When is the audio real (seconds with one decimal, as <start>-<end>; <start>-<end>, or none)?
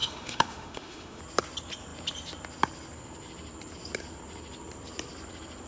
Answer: 1.2-5.7